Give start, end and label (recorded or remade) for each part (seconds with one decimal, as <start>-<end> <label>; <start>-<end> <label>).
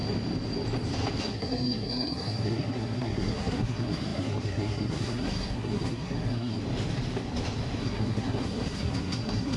0.0-1.2 recorded; 1.2-6.6 remade; 6.6-7.8 recorded; 7.8-9.6 remade